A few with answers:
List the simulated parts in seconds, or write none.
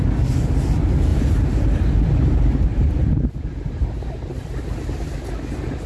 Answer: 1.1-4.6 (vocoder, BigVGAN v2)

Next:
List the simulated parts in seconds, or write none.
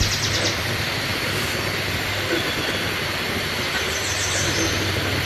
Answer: none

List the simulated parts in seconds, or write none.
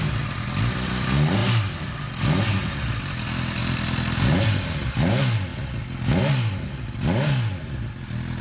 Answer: 3.6-4.4 (vocoder, BigVGAN v2)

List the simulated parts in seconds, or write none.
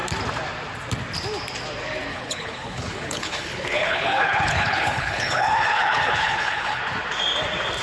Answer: 2.1-6.8 (codec, HILCodec)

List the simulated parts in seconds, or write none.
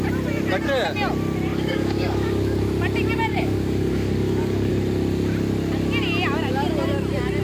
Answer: 1.5-2.6 (codec, DAC); 3.3-4.7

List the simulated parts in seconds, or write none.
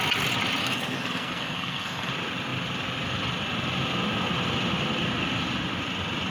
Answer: 0.6-2.1 (codec, SNAC)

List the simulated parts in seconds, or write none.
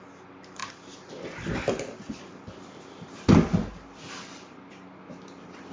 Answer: none